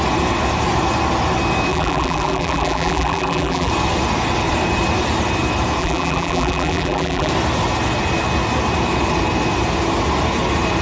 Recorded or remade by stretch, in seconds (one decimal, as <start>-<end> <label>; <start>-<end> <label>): 0.0-1.7 recorded; 1.7-3.7 remade; 3.7-5.8 recorded; 5.8-7.3 remade; 7.3-10.8 recorded